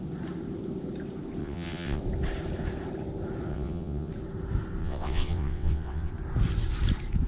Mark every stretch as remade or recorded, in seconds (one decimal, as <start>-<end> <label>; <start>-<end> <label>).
0.0-1.4 recorded; 1.4-2.0 remade; 2.0-3.5 recorded; 3.5-4.1 remade; 4.1-4.8 recorded; 4.8-6.1 remade; 6.1-7.3 recorded